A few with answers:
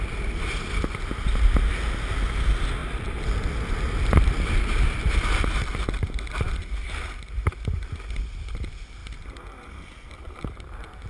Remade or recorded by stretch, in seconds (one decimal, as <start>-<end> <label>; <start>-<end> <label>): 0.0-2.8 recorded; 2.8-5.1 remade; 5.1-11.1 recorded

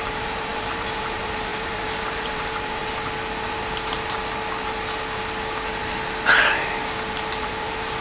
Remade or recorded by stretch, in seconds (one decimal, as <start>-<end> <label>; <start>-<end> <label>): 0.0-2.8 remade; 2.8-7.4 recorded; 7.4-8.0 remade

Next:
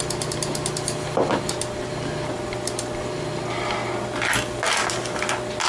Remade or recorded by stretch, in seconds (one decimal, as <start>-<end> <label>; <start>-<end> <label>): 0.0-5.7 recorded